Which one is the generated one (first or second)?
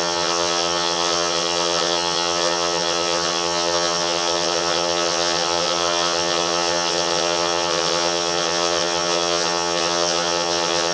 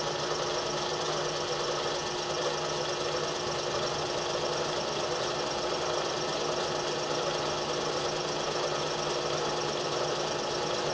first